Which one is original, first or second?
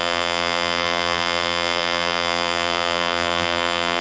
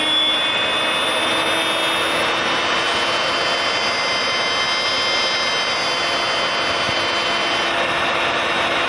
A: second